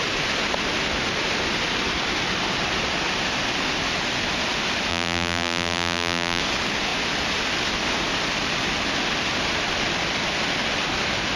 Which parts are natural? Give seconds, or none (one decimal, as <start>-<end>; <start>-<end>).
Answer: 0.0-4.9; 6.4-11.4

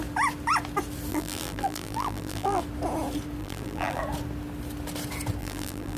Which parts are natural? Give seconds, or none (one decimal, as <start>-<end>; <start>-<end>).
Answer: 0.0-1.1; 2.6-3.4; 4.0-5.4

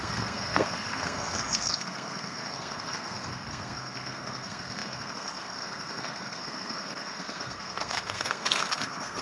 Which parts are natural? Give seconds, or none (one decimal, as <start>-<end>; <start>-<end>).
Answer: none

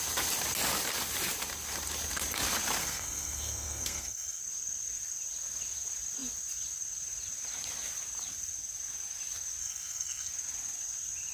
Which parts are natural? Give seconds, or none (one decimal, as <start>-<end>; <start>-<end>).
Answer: 0.0-2.8; 4.4-9.6; 10.3-11.3

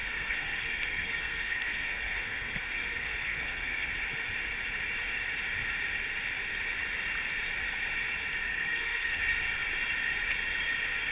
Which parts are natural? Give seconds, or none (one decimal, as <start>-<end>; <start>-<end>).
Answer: 3.9-8.5; 9.2-11.1

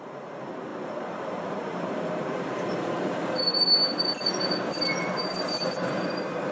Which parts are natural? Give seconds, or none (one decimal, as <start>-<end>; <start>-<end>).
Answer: 3.8-4.9

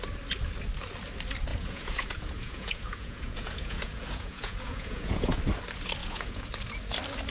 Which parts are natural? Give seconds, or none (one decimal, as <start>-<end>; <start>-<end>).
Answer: 0.0-1.5; 5.4-6.0; 6.5-7.3

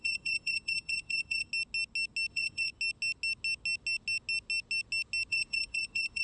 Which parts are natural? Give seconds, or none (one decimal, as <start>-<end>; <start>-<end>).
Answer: 1.5-2.3; 2.7-5.3